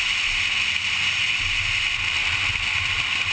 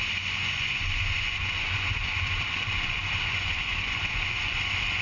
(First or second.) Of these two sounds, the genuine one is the first